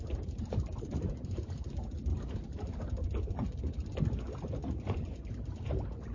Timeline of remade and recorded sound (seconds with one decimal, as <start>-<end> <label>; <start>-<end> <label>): 0.0-2.1 remade; 2.1-4.4 recorded; 4.4-6.1 remade